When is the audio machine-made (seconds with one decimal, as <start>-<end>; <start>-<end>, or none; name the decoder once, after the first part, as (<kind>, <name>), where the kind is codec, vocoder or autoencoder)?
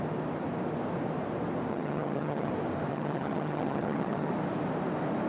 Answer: 1.7-2.5 (vocoder, HiFi-GAN); 2.9-4.3